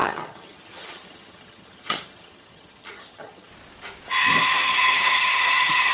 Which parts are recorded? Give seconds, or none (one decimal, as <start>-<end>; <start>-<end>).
3.5-4.7